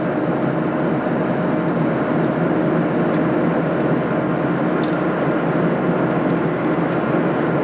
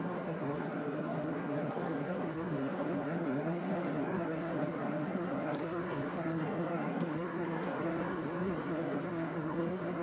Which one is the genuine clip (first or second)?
first